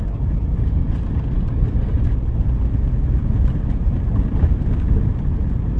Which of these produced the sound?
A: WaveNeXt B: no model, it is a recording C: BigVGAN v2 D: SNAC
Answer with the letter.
B